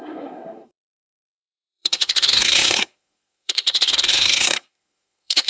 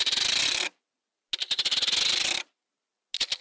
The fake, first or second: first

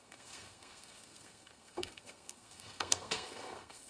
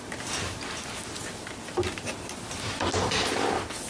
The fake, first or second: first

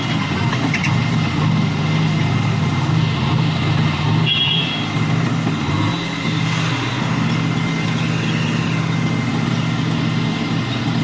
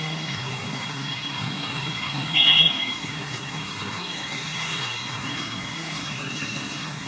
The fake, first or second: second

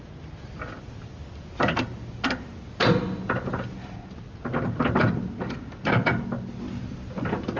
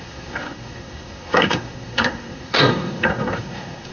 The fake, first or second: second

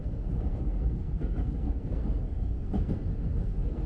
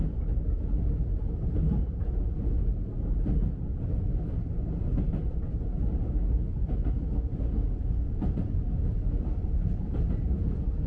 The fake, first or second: first